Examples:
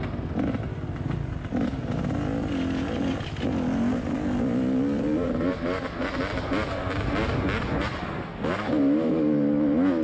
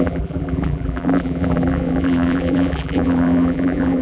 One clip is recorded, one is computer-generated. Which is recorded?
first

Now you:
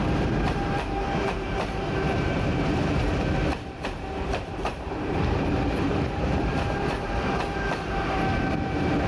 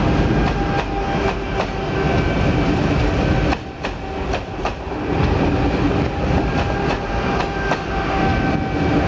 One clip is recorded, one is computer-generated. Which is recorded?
second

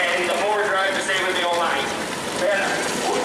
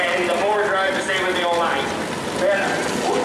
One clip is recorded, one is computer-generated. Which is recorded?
second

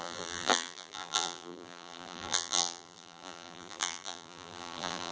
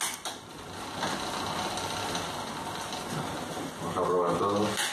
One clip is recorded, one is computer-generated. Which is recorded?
second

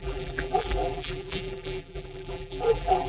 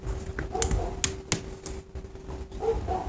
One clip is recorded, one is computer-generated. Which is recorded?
second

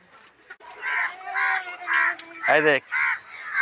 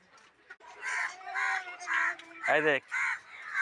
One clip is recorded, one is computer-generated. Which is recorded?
first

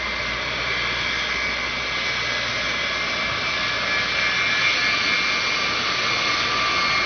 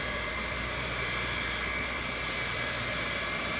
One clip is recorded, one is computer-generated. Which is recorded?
first